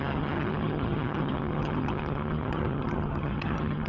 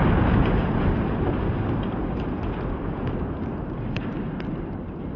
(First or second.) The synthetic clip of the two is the first